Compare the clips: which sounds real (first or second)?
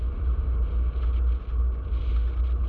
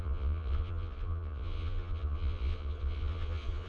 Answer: first